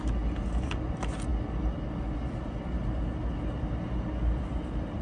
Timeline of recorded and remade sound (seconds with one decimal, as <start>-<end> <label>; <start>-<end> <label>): 0.0-5.0 recorded